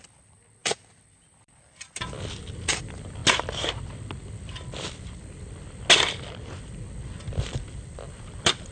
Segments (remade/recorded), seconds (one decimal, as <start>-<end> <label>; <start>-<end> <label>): 0.0-3.2 remade; 3.2-7.7 recorded; 7.7-8.7 remade